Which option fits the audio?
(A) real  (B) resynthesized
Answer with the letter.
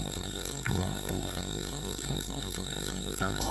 B